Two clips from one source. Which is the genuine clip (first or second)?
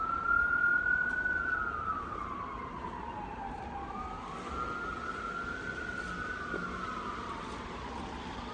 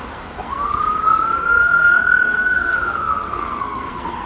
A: first